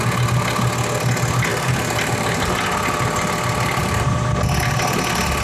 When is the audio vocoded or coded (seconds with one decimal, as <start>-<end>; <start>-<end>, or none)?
1.5-2.5; 3.8-4.3